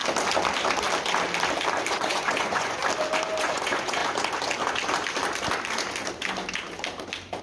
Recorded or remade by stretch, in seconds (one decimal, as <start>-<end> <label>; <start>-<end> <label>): 0.0-1.9 recorded; 1.9-2.8 remade; 2.8-3.4 recorded; 3.4-4.0 remade; 4.0-7.4 recorded